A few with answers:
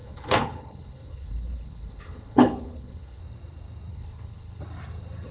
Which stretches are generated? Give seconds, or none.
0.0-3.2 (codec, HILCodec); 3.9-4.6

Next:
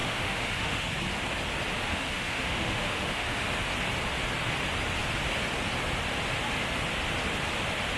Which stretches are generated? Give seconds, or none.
0.0-0.9 (autoencoder, DAC-VAE); 1.9-3.5

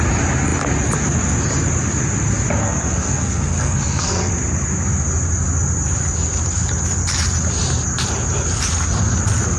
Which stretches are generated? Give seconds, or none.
2.6-4.3 (codec, SNAC)

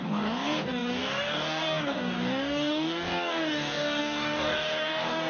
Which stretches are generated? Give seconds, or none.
0.0-5.3 (codec, DAC)

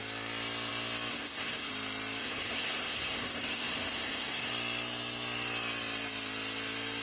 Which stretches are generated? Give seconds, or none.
1.1-1.7 (codec, SNAC); 2.2-4.5

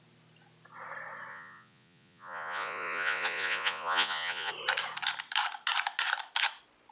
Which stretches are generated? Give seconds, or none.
1.3-4.5 (vocoder, Vocos)

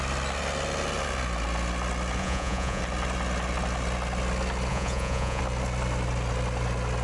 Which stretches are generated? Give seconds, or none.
2.2-2.8 (vocoder, Vocos); 4.7-5.4